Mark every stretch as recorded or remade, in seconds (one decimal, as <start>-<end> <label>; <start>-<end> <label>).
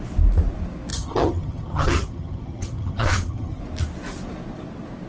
0.0-0.9 recorded; 0.9-3.6 remade; 3.6-5.1 recorded